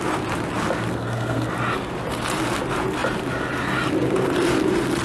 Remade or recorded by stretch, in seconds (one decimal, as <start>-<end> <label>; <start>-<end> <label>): 0.0-0.9 recorded; 0.9-1.5 remade; 1.5-5.0 recorded